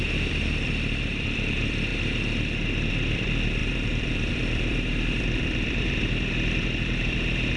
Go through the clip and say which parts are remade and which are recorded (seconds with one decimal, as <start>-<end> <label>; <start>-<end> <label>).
0.0-1.9 remade; 1.9-2.9 recorded; 2.9-7.6 remade